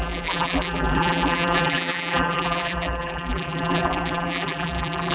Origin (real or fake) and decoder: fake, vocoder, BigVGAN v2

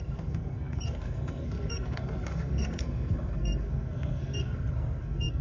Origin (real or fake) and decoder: fake, codec, SNAC